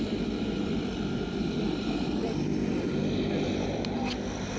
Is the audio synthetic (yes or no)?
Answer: yes